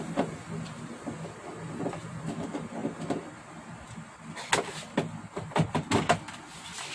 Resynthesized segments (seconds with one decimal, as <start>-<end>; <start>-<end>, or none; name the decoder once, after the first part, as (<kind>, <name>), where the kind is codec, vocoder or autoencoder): none